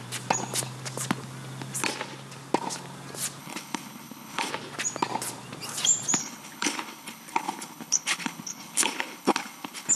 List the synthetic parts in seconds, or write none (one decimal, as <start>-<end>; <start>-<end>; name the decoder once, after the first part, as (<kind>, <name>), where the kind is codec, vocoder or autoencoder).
3.4-4.5 (codec, HILCodec); 6.2-9.9